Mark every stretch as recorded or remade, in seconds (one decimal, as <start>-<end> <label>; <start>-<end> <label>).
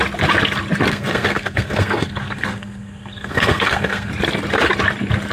0.0-0.9 recorded; 0.9-4.1 remade; 4.1-5.3 recorded